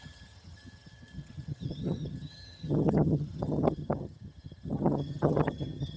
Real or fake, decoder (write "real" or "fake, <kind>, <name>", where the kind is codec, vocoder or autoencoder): fake, vocoder, HiFi-GAN